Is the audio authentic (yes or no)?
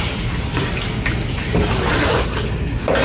yes